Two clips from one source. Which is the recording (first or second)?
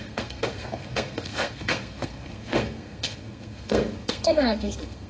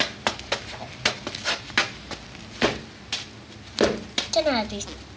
second